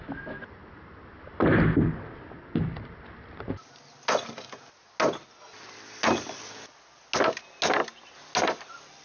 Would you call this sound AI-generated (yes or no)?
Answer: no